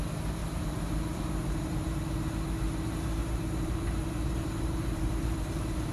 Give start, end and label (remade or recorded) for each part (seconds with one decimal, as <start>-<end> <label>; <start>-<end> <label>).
0.0-0.4 recorded; 0.4-1.8 remade; 1.8-3.2 recorded; 3.2-5.9 remade